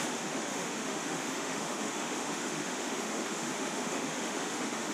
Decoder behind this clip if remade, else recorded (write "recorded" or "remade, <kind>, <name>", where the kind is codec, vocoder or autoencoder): remade, autoencoder, DAC-VAE